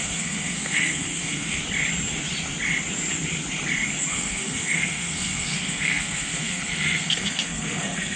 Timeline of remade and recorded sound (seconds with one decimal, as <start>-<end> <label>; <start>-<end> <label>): 0.0-1.6 remade; 1.6-4.1 recorded; 4.1-8.2 remade